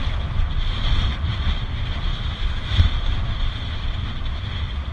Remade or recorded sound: remade